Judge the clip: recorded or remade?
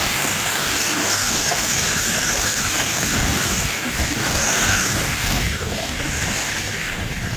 remade